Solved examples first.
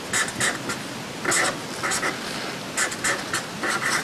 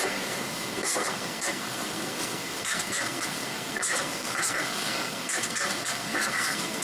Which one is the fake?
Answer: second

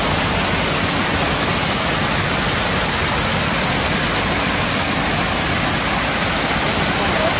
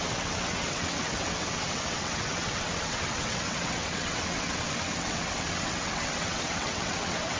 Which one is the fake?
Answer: second